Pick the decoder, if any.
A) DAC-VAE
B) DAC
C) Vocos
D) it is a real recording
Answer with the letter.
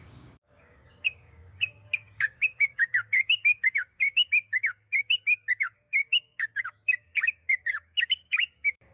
B